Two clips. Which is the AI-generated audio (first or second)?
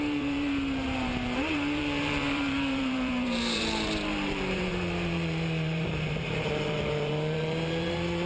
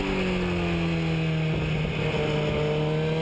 first